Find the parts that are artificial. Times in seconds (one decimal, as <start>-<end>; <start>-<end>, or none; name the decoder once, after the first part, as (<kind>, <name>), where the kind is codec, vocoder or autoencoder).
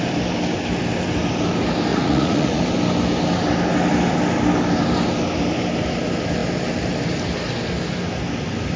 1.9-2.6 (vocoder, Vocos)